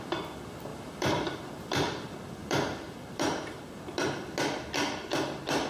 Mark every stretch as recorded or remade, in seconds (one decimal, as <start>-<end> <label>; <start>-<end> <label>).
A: 0.0-0.7 recorded; 0.7-1.5 remade; 1.5-2.4 recorded; 2.4-3.6 remade; 3.6-5.7 recorded